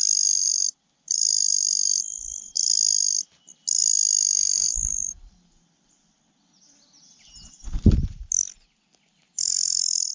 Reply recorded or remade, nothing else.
recorded